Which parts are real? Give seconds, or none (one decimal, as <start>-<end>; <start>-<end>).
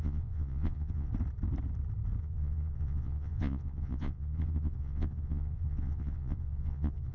1.1-2.2